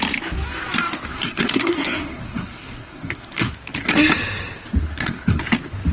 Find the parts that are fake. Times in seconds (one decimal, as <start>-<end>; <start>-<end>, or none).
1.1-3.5; 4.8-5.4